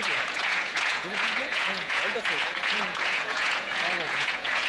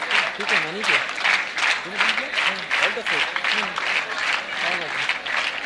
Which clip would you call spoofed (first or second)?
first